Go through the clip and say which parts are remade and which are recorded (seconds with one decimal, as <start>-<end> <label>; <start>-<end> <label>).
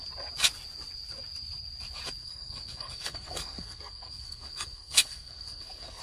0.0-2.2 recorded; 2.2-6.0 remade